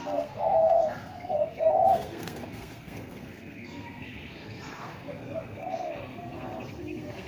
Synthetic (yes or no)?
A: yes